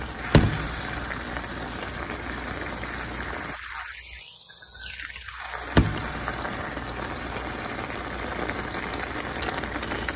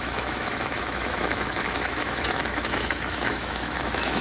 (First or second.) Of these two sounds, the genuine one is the first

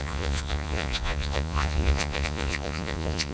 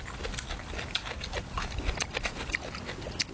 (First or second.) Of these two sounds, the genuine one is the second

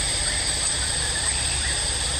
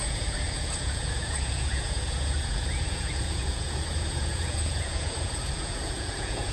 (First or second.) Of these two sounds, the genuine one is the first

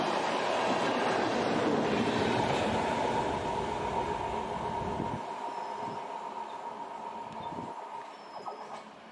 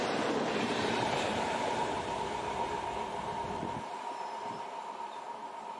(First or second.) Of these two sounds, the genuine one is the first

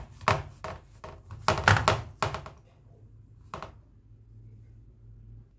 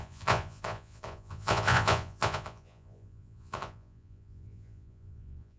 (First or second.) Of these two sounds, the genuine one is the first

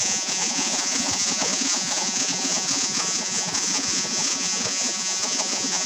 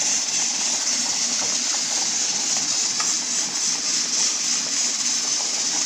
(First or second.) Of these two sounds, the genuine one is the second